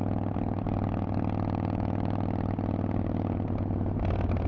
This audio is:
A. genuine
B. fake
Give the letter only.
A